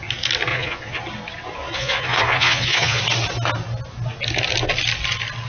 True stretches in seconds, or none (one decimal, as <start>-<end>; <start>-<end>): 0.0-0.5; 1.0-1.6; 3.0-5.5